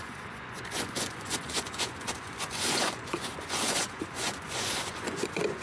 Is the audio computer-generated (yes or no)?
yes